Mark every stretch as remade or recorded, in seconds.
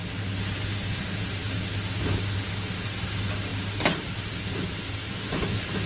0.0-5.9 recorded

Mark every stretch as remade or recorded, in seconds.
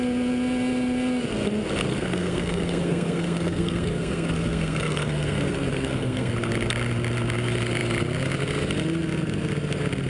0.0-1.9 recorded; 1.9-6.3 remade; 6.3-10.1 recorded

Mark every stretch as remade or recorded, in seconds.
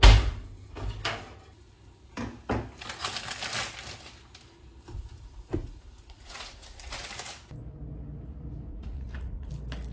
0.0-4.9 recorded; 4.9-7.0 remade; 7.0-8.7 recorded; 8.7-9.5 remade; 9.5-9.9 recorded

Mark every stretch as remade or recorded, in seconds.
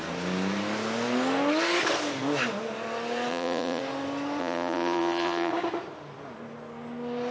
0.0-3.3 recorded; 3.3-3.8 remade; 3.8-4.4 recorded; 4.4-5.5 remade; 5.5-7.3 recorded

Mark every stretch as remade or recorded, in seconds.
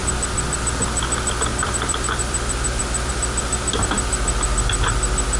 0.0-0.6 remade; 0.6-1.5 recorded; 1.5-3.1 remade; 3.1-5.4 recorded